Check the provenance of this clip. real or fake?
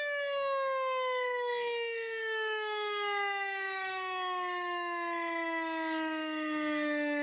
fake